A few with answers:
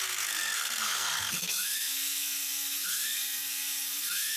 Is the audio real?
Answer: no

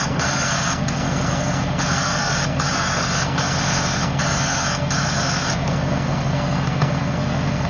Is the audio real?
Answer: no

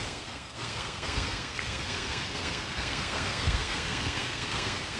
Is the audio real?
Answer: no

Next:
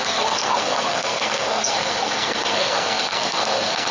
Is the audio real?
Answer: no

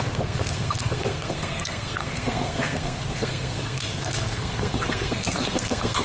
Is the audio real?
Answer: no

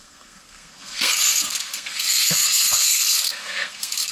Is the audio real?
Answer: no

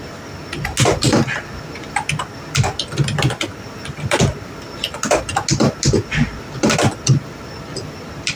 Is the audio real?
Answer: yes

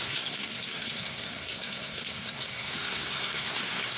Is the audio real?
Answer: no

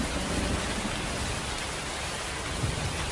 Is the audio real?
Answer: yes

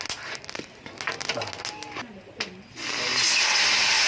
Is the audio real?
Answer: yes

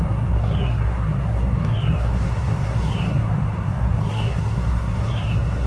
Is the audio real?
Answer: no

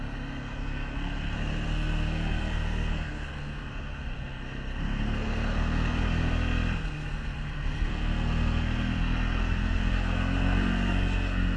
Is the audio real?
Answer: no